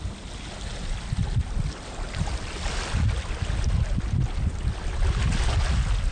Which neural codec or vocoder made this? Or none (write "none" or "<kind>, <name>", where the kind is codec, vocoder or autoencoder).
none